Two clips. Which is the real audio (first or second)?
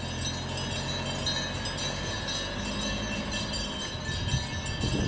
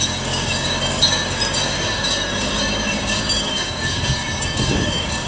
first